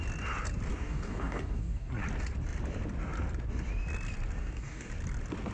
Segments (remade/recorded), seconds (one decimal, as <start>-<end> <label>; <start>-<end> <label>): 0.0-0.7 recorded; 0.7-1.9 remade; 1.9-4.4 recorded; 4.4-4.9 remade; 4.9-5.5 recorded